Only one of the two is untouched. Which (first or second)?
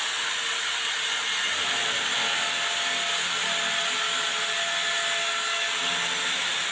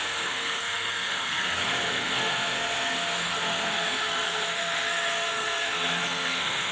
first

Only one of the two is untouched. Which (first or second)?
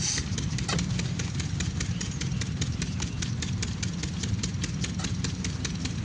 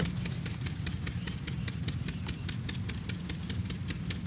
second